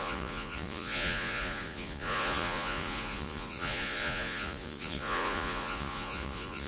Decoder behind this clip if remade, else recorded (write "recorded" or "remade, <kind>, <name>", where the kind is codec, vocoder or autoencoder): remade, vocoder, Vocos